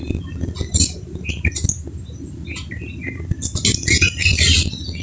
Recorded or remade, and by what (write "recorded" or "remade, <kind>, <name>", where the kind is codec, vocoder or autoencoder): recorded